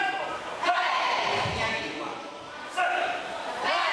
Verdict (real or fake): fake